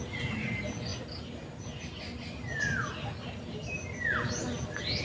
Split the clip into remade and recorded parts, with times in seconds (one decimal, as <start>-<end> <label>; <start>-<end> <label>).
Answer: 0.0-5.0 recorded